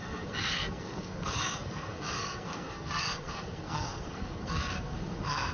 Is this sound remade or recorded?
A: remade